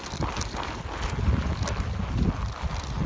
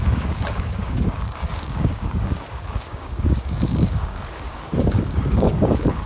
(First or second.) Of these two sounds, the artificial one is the second